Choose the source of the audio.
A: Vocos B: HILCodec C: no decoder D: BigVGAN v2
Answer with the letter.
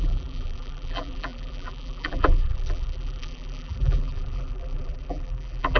D